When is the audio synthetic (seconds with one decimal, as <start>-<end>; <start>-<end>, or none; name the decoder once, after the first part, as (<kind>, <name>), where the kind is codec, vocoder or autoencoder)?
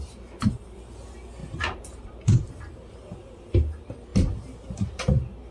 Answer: 1.4-2.9 (vocoder, BigVGAN v2)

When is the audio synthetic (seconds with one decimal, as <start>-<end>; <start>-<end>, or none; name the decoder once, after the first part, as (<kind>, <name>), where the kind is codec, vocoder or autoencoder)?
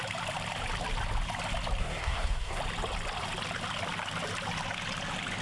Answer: 1.8-2.6 (codec, SNAC)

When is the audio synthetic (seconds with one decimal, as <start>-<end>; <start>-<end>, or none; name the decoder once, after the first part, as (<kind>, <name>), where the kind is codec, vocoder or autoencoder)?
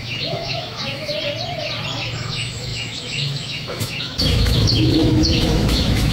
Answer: 0.0-1.1 (autoencoder, DAC-VAE); 1.9-6.1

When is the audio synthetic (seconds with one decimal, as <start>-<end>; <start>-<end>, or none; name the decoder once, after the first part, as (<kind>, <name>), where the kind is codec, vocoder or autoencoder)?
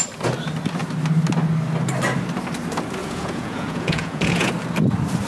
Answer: 3.0-4.5 (vocoder, Vocos)